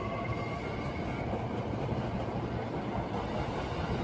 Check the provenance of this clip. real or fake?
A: real